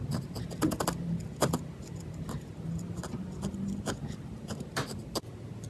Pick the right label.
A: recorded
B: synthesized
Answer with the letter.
A